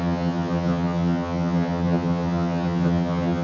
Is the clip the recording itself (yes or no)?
no